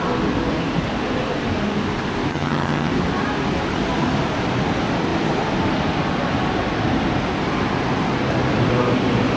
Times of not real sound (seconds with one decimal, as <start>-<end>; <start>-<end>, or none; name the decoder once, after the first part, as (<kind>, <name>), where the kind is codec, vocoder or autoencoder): 2.3-2.9 (vocoder, HiFi-GAN)